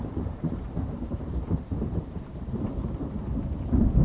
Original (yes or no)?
no